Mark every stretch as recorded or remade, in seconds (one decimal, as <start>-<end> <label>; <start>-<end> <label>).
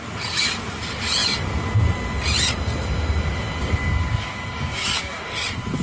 0.0-3.6 recorded; 3.6-5.2 remade; 5.2-5.8 recorded